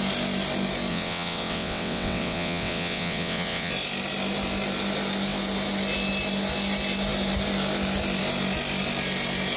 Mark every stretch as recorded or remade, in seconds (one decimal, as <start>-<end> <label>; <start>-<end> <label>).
0.0-0.9 recorded; 0.9-3.7 remade; 3.7-9.6 recorded